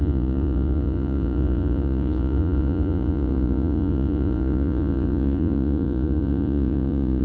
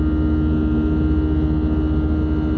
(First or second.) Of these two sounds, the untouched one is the second